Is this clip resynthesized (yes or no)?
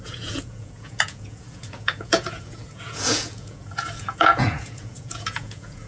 yes